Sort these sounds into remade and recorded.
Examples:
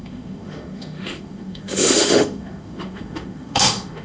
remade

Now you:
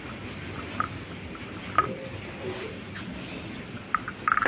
recorded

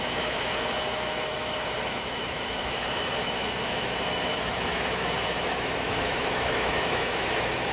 remade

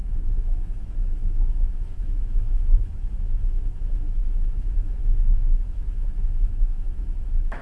remade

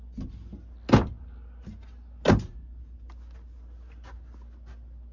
recorded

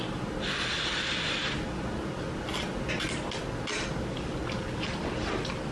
recorded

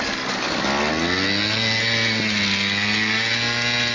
recorded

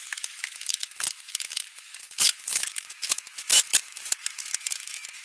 remade